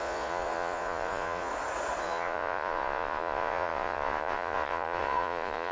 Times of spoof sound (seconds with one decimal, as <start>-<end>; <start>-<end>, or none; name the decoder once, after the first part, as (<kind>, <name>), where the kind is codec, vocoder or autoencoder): 0.0-1.5 (vocoder, Vocos); 2.0-5.7